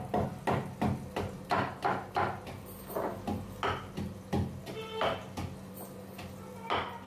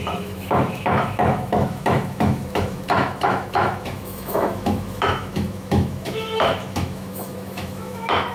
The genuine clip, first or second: first